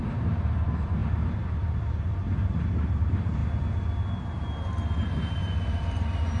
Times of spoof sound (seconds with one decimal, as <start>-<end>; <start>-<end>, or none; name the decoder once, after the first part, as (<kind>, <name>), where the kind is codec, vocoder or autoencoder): 0.0-3.4 (vocoder, BigVGAN v2); 5.0-6.4